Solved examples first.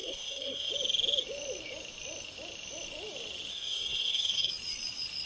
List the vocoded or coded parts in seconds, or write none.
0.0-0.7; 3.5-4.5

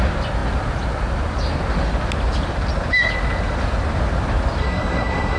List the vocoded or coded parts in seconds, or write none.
4.6-5.4